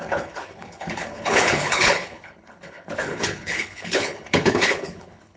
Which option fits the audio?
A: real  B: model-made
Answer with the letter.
B